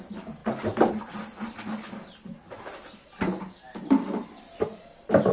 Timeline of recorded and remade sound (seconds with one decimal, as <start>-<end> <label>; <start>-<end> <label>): 0.0-5.3 recorded